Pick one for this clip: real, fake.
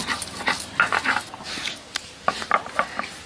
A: real